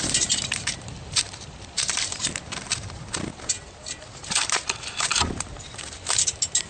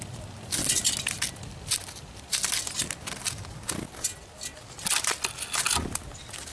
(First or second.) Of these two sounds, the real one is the second